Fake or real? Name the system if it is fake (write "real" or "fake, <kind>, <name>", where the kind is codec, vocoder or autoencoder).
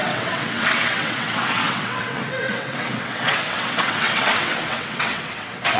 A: fake, vocoder, WaveNeXt